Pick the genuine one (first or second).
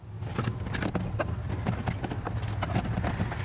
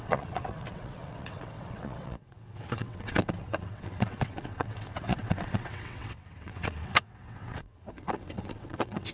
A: first